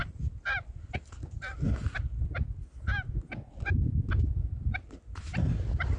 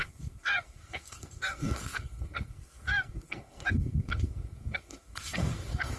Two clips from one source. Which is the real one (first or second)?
first